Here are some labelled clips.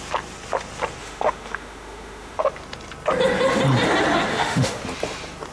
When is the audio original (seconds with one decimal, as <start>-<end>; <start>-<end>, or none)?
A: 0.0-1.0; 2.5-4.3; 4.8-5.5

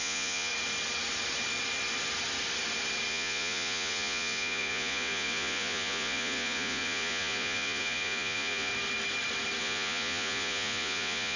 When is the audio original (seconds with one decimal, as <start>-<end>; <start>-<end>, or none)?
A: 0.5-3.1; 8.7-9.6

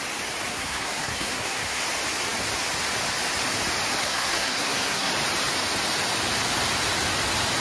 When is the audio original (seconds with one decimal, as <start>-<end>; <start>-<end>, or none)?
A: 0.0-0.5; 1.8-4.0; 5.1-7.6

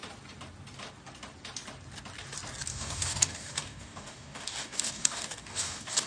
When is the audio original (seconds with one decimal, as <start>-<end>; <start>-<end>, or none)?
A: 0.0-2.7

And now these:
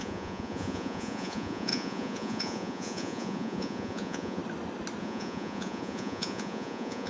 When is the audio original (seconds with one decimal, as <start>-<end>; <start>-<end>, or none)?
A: 4.4-5.0